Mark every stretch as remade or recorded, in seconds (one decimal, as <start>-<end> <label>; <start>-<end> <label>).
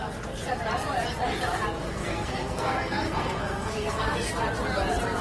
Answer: 0.0-1.8 recorded; 1.8-4.3 remade; 4.3-5.2 recorded